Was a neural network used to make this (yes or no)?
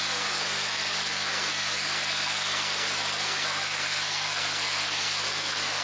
yes